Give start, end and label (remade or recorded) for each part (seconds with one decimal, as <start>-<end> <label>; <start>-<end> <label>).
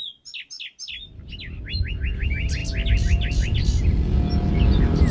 0.0-5.1 recorded